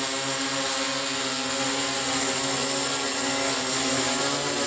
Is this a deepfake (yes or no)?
no